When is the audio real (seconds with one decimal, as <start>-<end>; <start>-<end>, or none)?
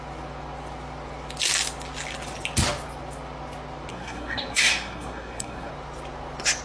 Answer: 0.0-3.9; 5.7-6.6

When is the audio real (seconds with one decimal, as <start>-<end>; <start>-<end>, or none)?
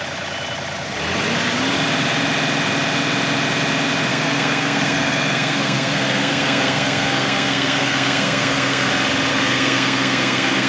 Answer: 0.0-4.1; 8.9-9.3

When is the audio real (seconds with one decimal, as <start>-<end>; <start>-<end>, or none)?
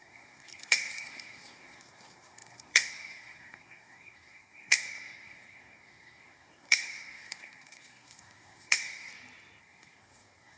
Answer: 9.1-9.6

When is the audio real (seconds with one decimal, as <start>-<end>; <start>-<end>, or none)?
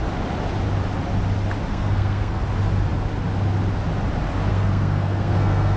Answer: 0.0-1.7; 2.4-4.5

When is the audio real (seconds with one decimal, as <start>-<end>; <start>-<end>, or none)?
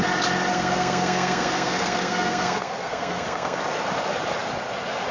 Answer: 0.0-0.5; 3.6-5.1